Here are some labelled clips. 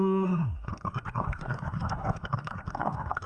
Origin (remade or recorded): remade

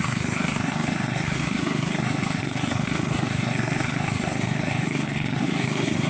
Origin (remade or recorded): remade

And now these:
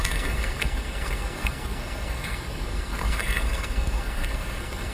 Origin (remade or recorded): remade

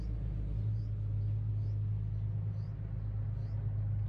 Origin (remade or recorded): recorded